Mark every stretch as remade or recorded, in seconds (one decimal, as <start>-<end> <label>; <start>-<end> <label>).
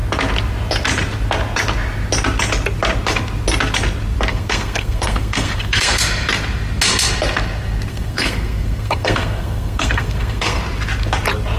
0.0-4.3 recorded; 4.3-6.0 remade; 6.0-7.9 recorded; 7.9-10.6 remade; 10.6-11.6 recorded